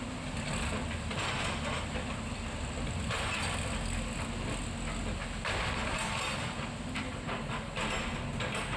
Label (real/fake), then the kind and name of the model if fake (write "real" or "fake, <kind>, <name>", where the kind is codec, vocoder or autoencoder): real